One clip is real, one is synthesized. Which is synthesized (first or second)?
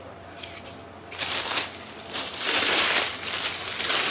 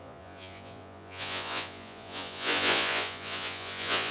second